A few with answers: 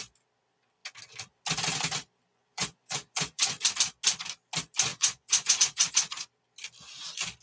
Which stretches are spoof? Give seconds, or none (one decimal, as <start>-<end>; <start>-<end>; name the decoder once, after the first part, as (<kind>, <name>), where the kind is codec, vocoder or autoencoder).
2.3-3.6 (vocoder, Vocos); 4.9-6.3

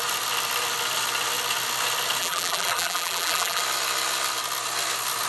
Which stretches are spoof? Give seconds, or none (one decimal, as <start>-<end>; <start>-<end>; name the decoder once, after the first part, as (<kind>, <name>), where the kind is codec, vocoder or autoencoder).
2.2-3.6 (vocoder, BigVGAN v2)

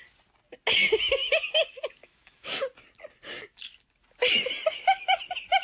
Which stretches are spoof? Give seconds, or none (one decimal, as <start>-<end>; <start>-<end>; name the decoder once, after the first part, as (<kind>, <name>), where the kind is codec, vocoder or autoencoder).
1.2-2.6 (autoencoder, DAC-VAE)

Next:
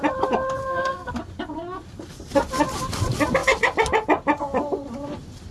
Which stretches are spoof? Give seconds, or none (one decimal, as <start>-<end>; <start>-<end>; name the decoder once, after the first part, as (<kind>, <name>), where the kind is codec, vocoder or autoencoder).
0.6-1.1 (codec, SNAC)